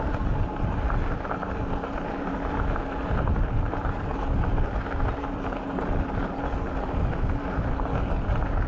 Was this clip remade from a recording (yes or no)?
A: no